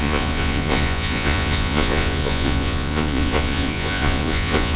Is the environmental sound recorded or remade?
remade